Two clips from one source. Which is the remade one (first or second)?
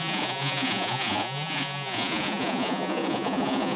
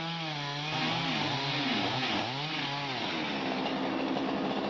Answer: first